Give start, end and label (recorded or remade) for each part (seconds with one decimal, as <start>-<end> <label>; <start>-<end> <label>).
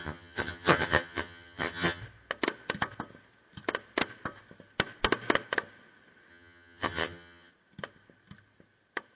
0.0-2.0 remade; 2.0-6.3 recorded; 6.3-7.5 remade; 7.5-9.2 recorded